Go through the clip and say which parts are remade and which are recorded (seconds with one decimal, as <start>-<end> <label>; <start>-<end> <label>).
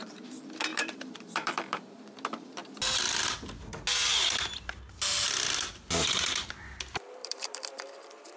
0.0-0.7 recorded; 0.7-2.1 remade; 2.1-7.2 recorded; 7.2-7.9 remade; 7.9-8.4 recorded